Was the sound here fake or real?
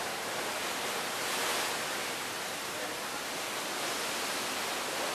real